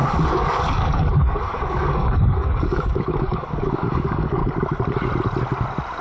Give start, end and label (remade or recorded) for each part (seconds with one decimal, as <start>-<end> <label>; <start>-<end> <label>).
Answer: 0.0-4.4 remade; 4.4-6.0 recorded